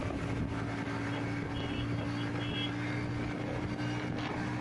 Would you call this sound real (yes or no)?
yes